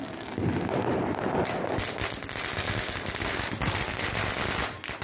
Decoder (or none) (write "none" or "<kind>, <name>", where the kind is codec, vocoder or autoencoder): none